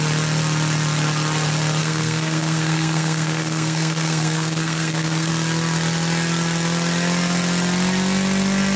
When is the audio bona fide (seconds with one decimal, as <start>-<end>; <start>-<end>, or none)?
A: 0.0-1.8; 5.3-8.8